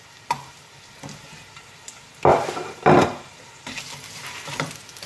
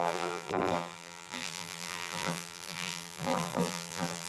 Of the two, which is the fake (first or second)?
second